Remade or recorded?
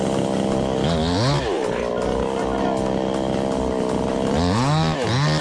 recorded